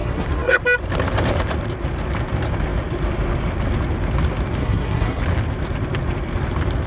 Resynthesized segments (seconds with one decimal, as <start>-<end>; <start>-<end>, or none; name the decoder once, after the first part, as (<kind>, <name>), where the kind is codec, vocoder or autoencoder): 0.0-0.6 (codec, SNAC); 4.6-5.2